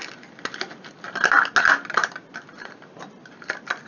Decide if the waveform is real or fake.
real